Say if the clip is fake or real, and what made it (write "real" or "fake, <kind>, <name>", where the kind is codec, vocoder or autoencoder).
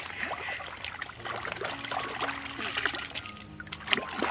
real